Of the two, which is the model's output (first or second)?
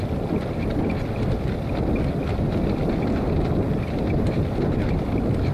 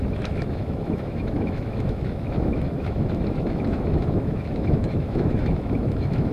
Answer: second